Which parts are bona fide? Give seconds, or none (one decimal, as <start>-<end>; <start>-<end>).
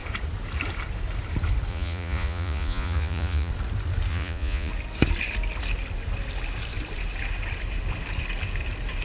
0.0-1.7; 3.5-4.1; 4.7-9.0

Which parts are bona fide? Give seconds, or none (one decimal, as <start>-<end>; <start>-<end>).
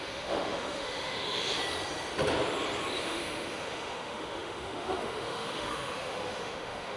1.6-3.0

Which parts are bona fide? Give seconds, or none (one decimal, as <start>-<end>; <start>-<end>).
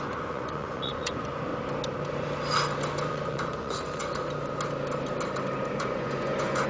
1.5-3.1; 4.0-5.6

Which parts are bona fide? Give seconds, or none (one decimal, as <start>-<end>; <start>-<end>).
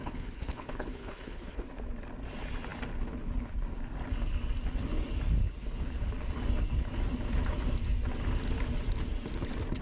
1.7-5.6; 6.1-9.8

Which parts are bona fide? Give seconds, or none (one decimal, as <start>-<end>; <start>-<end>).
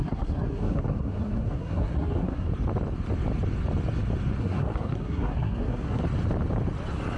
2.5-4.4; 6.0-7.2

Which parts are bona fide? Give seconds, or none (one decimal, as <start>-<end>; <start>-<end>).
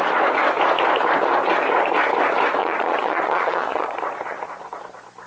0.0-2.6; 4.8-5.3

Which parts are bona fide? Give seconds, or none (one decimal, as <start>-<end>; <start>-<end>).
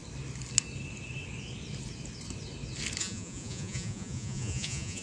0.0-3.0